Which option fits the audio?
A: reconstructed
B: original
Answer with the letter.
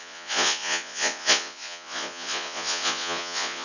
A